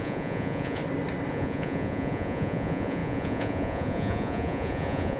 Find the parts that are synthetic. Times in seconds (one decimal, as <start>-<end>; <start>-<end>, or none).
0.0-0.8; 1.3-5.2